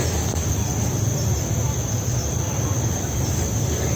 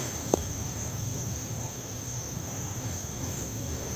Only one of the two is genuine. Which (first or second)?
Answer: first